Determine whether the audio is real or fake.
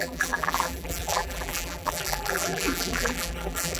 fake